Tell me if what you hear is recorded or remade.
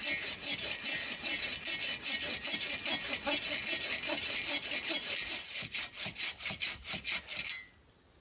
recorded